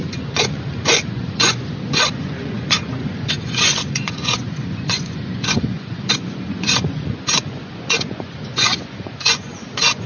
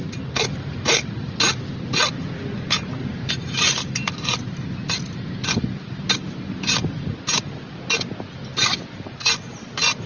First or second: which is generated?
first